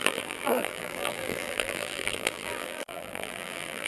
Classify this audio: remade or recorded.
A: remade